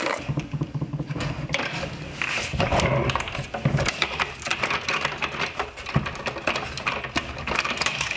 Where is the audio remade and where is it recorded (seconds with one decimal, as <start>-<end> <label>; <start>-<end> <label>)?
0.0-2.7 remade; 2.7-3.5 recorded; 3.5-4.5 remade; 4.5-7.2 recorded; 7.2-8.2 remade